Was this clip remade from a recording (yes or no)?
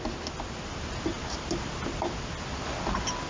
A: no